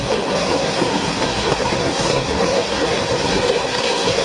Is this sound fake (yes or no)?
yes